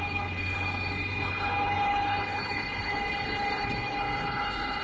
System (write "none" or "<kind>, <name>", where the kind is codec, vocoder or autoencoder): codec, HILCodec